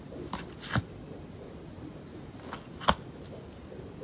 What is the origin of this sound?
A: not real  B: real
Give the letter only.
B